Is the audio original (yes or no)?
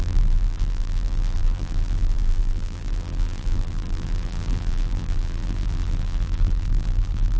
no